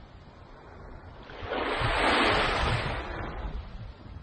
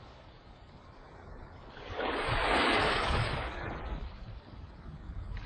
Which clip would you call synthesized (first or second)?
second